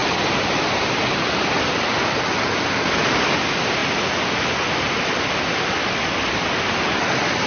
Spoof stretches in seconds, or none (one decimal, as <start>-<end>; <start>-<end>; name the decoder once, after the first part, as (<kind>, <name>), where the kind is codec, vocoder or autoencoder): none